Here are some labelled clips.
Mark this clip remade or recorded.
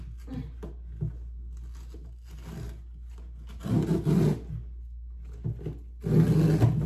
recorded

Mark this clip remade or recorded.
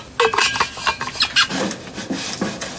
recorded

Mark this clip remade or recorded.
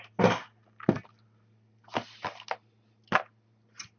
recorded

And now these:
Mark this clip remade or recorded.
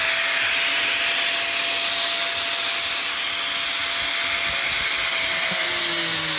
recorded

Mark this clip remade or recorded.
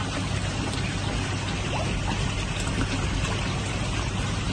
recorded